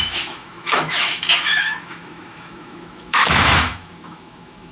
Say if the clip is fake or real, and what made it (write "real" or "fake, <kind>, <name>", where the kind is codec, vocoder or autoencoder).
fake, autoencoder, DAC-VAE